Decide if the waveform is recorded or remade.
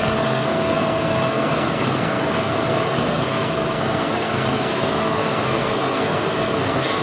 remade